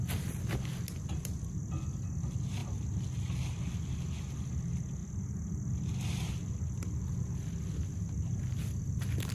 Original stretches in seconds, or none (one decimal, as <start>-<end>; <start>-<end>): 0.0-9.3